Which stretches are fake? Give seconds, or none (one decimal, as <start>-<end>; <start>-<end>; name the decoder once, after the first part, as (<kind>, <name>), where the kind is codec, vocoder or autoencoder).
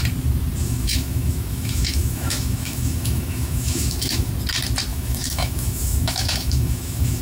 0.6-4.3 (autoencoder, DAC-VAE); 4.9-7.2